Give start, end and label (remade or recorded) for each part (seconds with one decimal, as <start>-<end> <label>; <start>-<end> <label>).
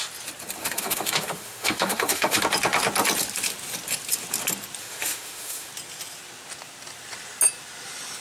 0.0-0.6 recorded; 0.6-2.4 remade; 2.4-4.8 recorded; 4.8-5.7 remade; 5.7-8.2 recorded